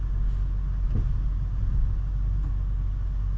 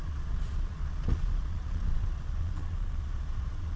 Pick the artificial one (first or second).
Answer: second